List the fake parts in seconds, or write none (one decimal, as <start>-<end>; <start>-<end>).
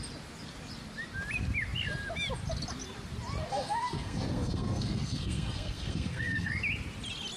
3.5-6.5